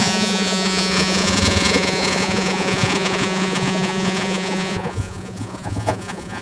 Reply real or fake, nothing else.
fake